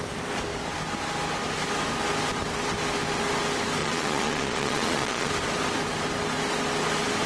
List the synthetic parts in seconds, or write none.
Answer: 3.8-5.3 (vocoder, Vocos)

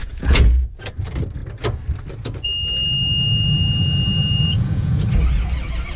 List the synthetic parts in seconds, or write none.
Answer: 0.0-0.8 (vocoder, Vocos); 4.5-5.0